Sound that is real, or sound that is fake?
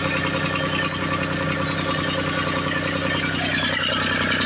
real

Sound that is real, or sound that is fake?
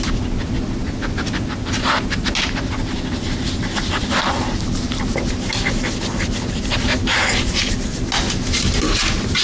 real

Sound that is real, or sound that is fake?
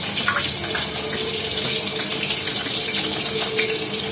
real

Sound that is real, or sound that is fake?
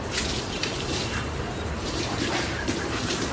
fake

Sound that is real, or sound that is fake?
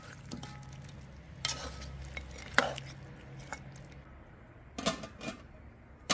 real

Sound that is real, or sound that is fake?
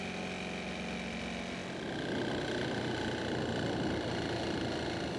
real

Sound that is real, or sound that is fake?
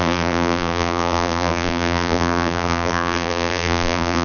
fake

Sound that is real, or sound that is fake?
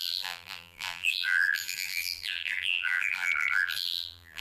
fake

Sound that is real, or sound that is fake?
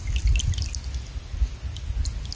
real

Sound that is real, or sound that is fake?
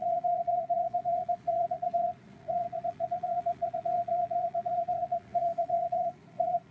fake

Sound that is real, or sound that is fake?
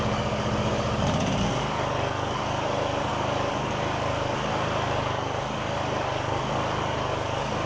fake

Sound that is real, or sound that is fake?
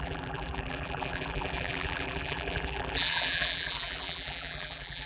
fake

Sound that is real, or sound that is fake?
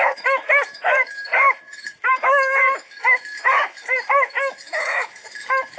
fake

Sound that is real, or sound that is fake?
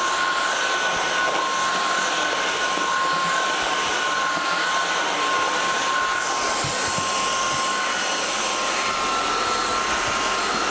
real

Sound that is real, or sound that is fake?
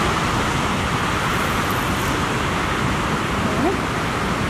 real